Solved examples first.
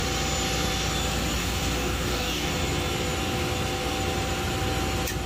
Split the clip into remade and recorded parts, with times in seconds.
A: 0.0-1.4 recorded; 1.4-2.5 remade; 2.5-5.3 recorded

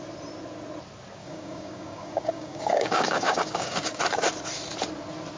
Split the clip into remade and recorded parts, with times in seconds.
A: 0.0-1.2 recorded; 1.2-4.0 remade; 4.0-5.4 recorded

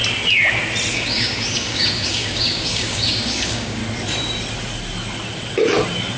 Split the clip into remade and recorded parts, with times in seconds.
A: 0.0-0.9 recorded; 0.9-3.8 remade; 3.8-6.2 recorded

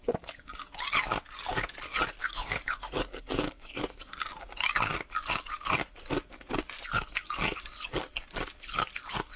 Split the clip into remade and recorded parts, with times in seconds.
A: 0.0-2.2 recorded; 2.2-4.1 remade; 4.1-9.4 recorded

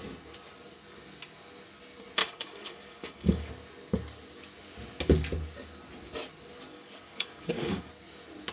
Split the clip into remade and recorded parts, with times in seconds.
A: 0.0-2.2 recorded; 2.2-3.5 remade; 3.5-6.7 recorded; 6.7-7.9 remade; 7.9-8.5 recorded

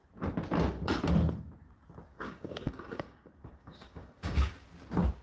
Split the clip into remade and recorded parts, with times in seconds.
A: 0.0-2.1 recorded; 2.1-4.7 remade; 4.7-5.2 recorded